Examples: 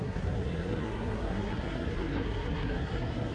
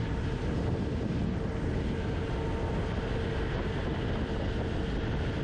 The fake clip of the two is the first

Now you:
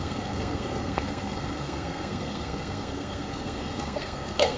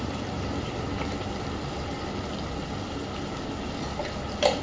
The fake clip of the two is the first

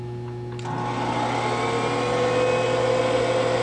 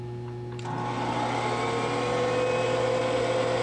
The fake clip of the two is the second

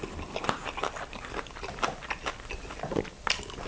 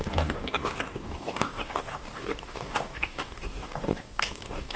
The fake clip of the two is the second